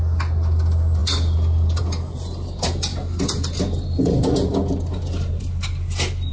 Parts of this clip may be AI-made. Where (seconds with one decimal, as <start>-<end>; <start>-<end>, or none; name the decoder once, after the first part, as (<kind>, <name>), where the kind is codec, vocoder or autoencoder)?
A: none